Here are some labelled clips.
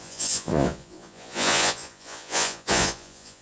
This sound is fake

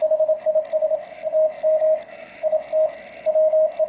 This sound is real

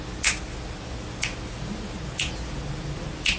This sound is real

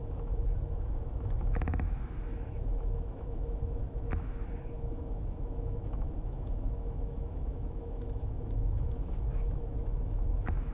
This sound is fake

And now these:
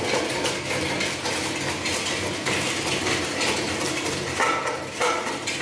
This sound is real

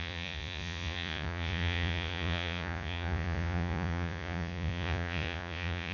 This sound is fake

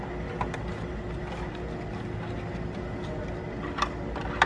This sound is real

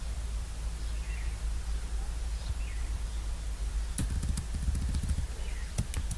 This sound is real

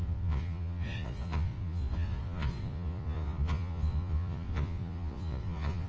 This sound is fake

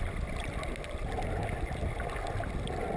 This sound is real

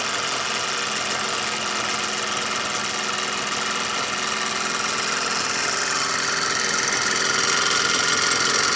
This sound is real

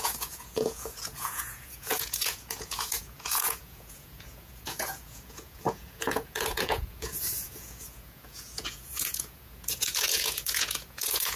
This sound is fake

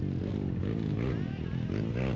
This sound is real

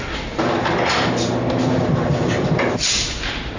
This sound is real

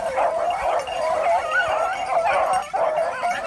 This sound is real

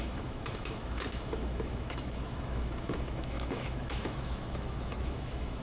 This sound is fake